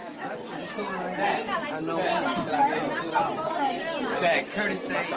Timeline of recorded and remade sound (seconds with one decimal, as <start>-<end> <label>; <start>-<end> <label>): 0.0-5.2 recorded

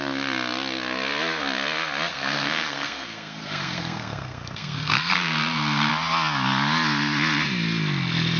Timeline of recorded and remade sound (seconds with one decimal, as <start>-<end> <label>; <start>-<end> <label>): 0.0-2.1 recorded; 2.1-5.9 remade; 5.9-8.4 recorded

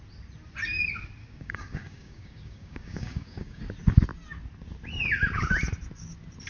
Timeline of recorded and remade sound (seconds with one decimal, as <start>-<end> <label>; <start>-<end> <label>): 0.0-1.2 recorded; 1.2-3.6 remade; 3.6-6.5 recorded

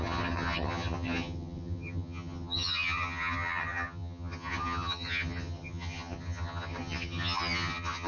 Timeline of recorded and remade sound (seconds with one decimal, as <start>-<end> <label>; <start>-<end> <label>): 0.0-8.1 remade

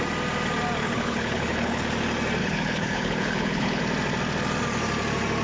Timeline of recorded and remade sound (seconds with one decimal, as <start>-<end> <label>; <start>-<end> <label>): 0.0-0.8 recorded; 0.8-1.8 remade; 1.8-2.4 recorded; 2.4-3.8 remade; 3.8-5.4 recorded

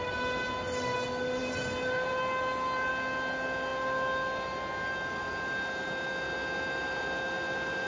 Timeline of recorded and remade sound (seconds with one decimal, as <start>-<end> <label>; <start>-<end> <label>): 0.0-1.4 recorded; 1.4-2.9 remade; 2.9-7.9 recorded